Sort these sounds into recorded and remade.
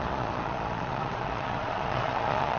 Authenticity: remade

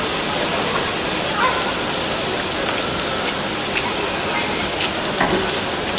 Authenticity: recorded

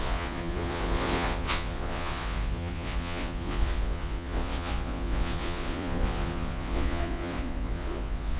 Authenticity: remade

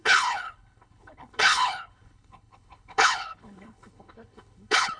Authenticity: remade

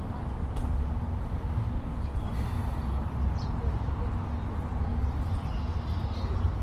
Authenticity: recorded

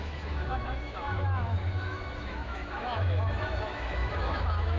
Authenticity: remade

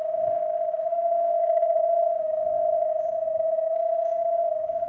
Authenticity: remade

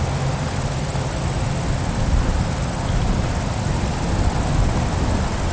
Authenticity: recorded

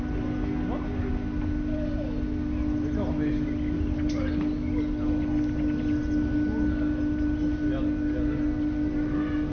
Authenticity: recorded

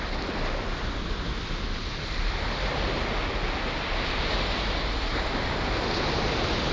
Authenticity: recorded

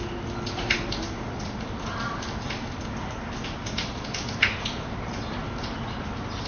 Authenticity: recorded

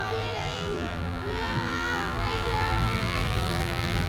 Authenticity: remade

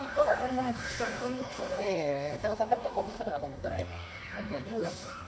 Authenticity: remade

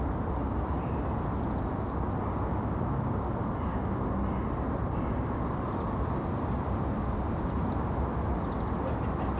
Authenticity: recorded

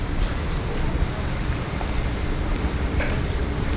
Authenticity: remade